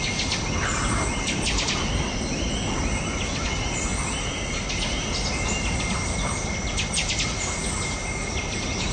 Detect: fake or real real